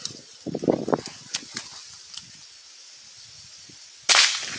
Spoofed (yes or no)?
no